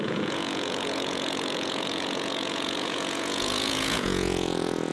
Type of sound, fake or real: fake